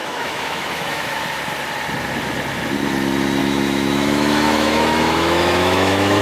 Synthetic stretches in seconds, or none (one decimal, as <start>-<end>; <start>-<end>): 0.0-1.2; 3.4-6.2